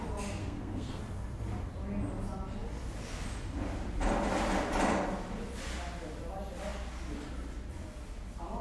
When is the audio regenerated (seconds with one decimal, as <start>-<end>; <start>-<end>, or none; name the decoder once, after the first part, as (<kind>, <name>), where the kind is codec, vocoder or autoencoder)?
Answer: 0.4-1.0 (codec, SNAC)